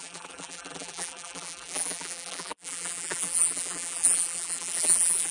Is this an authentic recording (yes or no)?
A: no